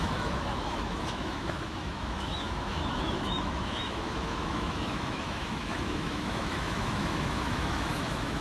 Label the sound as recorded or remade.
remade